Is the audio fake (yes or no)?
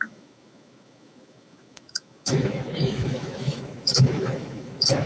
yes